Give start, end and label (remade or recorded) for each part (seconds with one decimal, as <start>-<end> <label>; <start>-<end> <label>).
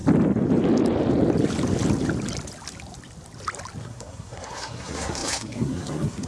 0.0-3.8 recorded; 3.8-6.3 remade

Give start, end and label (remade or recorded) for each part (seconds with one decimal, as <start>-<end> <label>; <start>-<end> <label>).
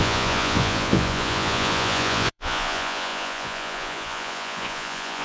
0.0-5.2 remade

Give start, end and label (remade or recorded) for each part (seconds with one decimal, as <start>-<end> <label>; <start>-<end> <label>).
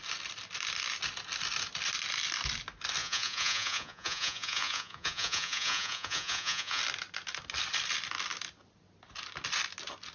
0.0-3.0 recorded; 3.0-6.8 remade; 6.8-10.1 recorded